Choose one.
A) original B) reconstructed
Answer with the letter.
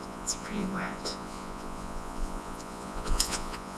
B